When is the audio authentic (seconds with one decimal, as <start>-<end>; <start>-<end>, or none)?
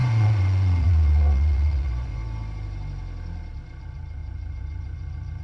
2.2-3.8